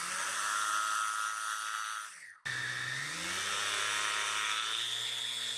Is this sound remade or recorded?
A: recorded